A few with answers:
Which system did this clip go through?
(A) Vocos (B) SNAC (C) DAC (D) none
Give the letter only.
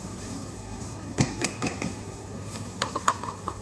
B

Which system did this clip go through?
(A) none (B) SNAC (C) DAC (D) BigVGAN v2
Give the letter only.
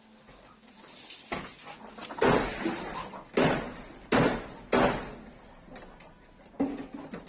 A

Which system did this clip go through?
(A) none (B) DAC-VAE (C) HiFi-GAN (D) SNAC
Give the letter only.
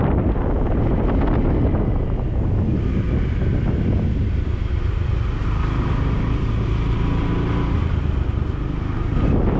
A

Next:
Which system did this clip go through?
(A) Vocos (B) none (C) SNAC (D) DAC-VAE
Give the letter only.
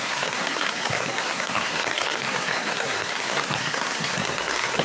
C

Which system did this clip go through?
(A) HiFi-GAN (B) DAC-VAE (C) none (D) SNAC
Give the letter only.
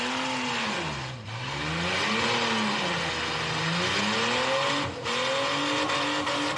C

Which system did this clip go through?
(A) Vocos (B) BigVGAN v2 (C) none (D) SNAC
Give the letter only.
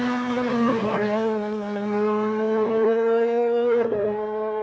D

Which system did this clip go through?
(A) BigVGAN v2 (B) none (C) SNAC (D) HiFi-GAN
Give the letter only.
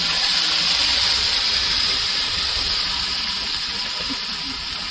B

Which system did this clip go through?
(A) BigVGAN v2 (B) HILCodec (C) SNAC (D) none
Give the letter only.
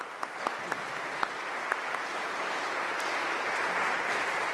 D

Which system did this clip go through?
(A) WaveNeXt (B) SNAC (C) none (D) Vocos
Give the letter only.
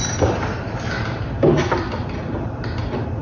C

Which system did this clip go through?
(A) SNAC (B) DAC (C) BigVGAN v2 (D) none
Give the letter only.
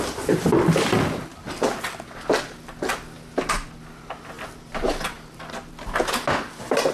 D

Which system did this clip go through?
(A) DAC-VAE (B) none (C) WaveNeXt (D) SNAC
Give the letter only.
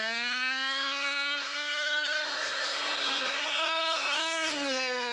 D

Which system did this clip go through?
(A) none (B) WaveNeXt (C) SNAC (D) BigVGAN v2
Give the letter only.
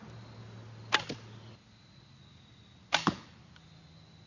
A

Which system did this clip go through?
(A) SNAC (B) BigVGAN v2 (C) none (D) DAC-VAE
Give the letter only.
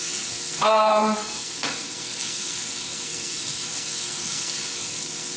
A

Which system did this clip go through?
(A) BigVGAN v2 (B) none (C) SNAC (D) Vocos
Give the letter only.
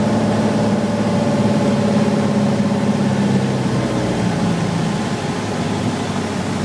B